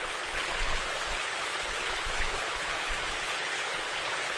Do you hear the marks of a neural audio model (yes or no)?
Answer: yes